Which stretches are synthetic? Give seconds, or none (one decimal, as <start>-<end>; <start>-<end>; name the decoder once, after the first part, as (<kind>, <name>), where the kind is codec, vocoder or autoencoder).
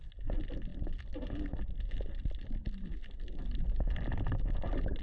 none